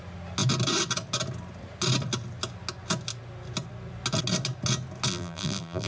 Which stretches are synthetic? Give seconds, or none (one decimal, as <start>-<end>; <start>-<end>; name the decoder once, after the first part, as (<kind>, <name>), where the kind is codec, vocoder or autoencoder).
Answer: 5.1-5.9 (vocoder, BigVGAN v2)